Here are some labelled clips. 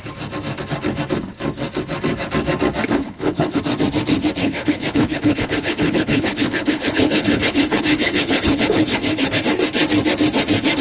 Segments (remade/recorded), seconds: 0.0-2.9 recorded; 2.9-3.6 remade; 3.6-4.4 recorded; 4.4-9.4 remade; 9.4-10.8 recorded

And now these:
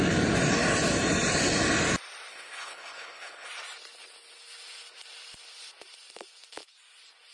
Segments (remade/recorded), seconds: 0.0-2.3 recorded; 2.3-3.5 remade; 3.5-7.3 recorded

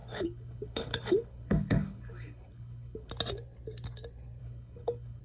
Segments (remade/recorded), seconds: 0.0-3.1 remade; 3.1-4.4 recorded; 4.4-5.2 remade

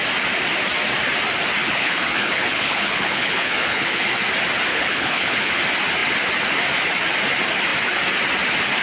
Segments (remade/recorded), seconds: 0.0-1.6 recorded; 1.6-4.1 remade; 4.1-4.7 recorded; 4.7-5.6 remade; 5.6-8.8 recorded

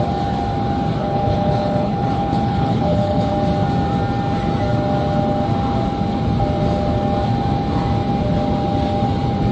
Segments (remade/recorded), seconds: 0.0-1.0 recorded; 1.0-3.3 remade; 3.3-9.5 recorded